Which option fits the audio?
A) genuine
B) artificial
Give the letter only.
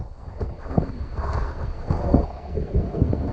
B